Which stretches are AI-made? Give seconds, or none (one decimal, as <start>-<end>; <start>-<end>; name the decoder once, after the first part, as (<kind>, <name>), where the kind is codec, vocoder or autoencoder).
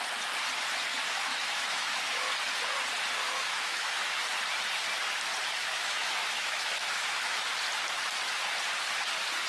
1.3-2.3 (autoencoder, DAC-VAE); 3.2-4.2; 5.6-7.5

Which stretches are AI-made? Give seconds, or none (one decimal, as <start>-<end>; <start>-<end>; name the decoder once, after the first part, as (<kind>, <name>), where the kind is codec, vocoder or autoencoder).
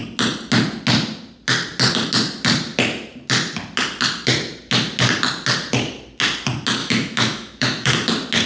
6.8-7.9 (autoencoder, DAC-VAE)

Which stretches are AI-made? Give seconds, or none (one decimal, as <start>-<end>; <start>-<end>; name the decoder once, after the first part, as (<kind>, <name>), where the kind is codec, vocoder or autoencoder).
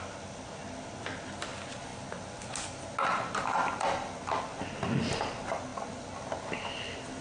none